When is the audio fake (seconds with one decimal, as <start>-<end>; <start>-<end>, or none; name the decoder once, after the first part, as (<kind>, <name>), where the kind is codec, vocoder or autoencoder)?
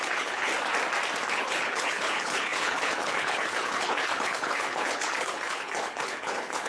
0.0-0.5 (codec, HILCodec); 1.3-6.7